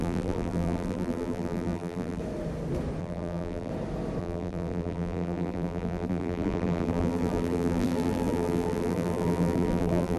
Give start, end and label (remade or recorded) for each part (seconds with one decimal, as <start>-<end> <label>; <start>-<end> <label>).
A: 0.0-2.2 remade; 2.2-3.0 recorded; 3.0-3.7 remade; 3.7-4.2 recorded; 4.2-10.2 remade